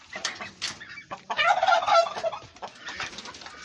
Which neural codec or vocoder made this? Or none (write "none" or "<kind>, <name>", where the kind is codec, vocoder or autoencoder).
none